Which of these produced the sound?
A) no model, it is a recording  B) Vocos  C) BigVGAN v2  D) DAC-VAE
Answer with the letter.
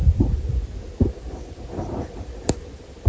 C